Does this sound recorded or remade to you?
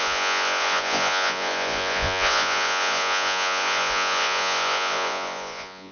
remade